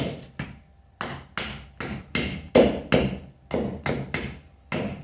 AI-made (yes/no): no